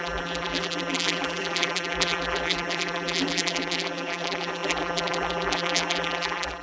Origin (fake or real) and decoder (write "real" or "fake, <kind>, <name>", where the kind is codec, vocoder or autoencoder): fake, vocoder, BigVGAN v2